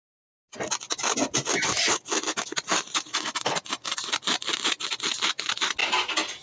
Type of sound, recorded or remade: recorded